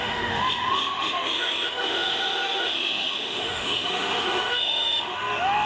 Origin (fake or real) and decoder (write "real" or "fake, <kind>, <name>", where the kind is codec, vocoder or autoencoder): fake, autoencoder, DAC-VAE